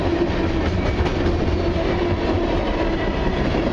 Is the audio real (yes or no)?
yes